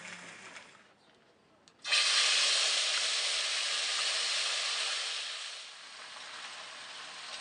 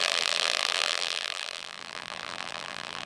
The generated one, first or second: second